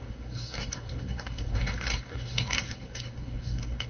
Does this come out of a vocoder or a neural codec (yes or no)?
yes